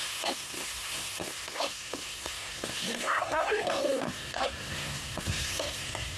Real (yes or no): no